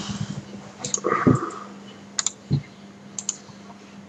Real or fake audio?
real